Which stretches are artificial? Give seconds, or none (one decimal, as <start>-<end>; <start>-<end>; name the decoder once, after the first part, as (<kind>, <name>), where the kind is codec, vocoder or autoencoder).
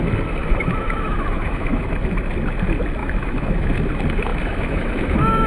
0.4-1.9 (autoencoder, DAC-VAE); 3.0-3.8; 4.3-5.5